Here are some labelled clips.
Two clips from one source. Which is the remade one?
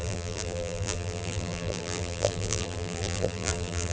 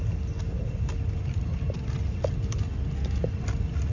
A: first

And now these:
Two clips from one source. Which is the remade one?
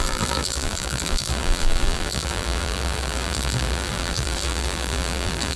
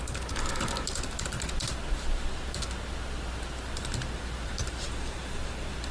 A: first